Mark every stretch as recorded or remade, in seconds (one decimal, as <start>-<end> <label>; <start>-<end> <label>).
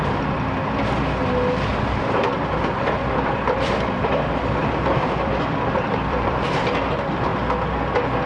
0.0-1.7 recorded; 1.7-6.5 remade; 6.5-8.3 recorded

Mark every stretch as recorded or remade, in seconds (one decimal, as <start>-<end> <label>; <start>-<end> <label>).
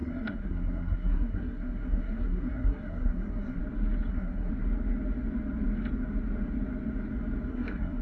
0.0-3.6 remade; 3.6-4.1 recorded; 4.1-4.5 remade; 4.5-7.5 recorded; 7.5-8.0 remade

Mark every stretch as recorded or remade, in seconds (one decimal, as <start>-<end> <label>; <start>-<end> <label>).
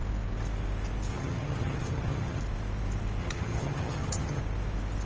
0.0-1.1 recorded; 1.1-2.4 remade; 2.4-3.2 recorded; 3.2-4.4 remade; 4.4-5.1 recorded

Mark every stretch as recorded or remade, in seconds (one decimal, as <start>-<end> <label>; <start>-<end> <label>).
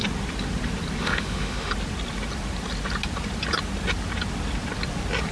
0.0-1.0 recorded; 1.0-1.7 remade; 1.7-5.3 recorded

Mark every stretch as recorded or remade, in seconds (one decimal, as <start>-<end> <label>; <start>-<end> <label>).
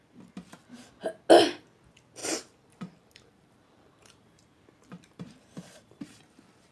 0.0-2.2 recorded; 2.2-6.2 remade; 6.2-6.7 recorded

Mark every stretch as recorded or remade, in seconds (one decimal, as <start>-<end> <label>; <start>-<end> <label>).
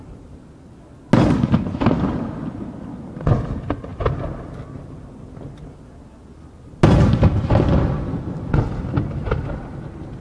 0.0-10.2 recorded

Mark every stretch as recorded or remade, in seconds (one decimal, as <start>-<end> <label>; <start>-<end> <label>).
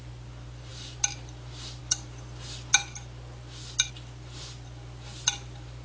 0.0-5.8 recorded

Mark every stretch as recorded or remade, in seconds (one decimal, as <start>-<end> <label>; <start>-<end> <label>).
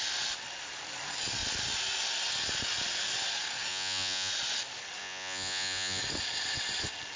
0.0-3.7 recorded; 3.7-4.3 remade; 4.3-5.0 recorded; 5.0-6.0 remade; 6.0-7.2 recorded